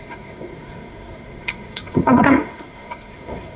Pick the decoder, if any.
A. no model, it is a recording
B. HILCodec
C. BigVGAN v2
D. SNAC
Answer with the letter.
D